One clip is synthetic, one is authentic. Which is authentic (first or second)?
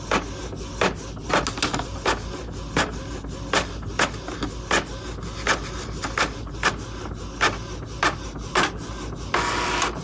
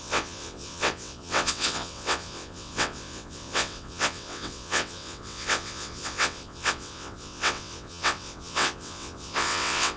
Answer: first